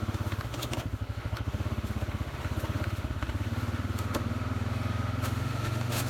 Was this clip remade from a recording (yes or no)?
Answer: yes